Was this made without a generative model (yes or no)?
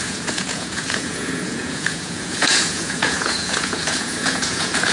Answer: no